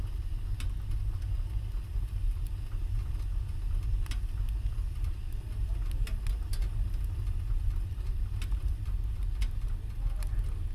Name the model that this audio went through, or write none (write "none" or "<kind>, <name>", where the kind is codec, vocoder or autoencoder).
none